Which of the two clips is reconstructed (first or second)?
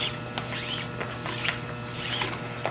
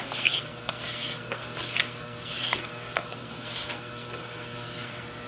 second